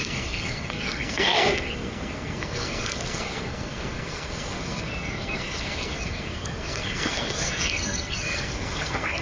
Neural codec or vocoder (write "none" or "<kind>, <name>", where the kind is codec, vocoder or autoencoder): codec, SNAC